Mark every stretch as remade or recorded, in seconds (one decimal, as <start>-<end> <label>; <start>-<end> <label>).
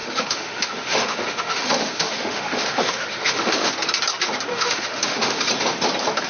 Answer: 0.0-3.7 remade; 3.7-4.5 recorded; 4.5-5.4 remade; 5.4-6.3 recorded